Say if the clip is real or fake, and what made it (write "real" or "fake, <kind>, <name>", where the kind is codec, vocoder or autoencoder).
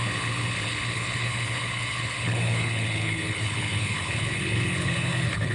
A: fake, codec, HILCodec